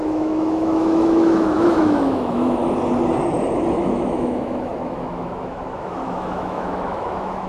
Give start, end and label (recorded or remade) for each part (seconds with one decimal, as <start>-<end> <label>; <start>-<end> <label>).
0.0-2.6 remade; 2.6-3.7 recorded; 3.7-7.5 remade